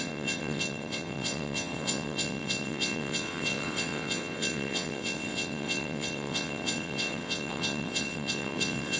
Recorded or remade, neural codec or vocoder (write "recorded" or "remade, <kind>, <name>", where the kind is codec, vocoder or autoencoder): remade, vocoder, WaveNeXt